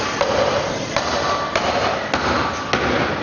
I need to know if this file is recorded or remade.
recorded